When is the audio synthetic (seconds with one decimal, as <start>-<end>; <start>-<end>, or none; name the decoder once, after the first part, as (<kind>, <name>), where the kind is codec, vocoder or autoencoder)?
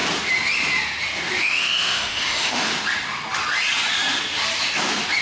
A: 1.4-2.7 (autoencoder, DAC-VAE)